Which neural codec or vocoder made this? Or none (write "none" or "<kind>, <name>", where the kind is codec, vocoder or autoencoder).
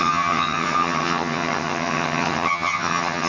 vocoder, HiFi-GAN